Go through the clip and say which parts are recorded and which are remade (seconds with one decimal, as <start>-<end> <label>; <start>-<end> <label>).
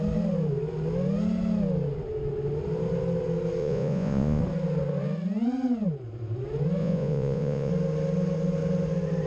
0.0-3.6 recorded; 3.6-4.4 remade; 4.4-6.8 recorded; 6.8-7.7 remade; 7.7-9.3 recorded